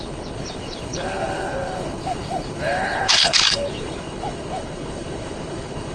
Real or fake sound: fake